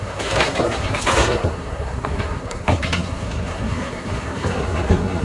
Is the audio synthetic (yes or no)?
yes